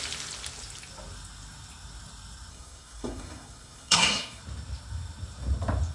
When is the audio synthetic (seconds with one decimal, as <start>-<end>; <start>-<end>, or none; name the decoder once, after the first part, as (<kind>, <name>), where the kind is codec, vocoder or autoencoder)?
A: 2.5-4.4 (codec, SNAC)